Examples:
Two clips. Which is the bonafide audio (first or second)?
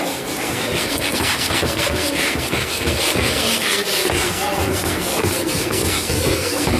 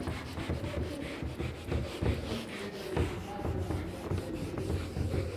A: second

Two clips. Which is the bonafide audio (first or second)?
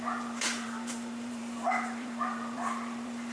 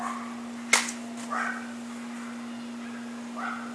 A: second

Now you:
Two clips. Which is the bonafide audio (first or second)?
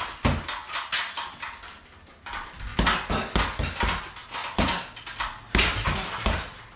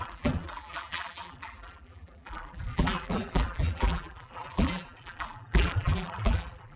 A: first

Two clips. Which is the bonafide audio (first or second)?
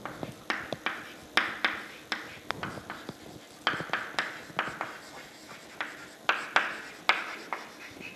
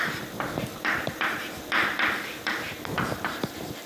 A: first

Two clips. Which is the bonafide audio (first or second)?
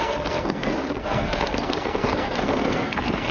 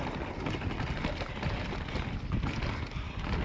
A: second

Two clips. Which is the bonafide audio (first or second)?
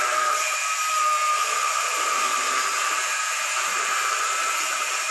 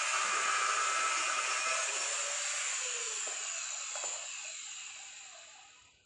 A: second